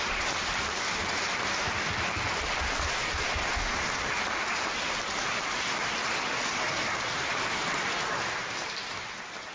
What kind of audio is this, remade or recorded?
recorded